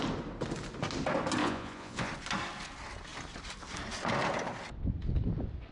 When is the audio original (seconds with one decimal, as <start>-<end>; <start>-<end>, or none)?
0.0-1.4; 2.1-5.7